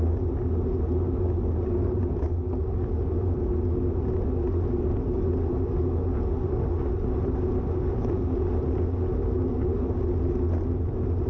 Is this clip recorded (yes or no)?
yes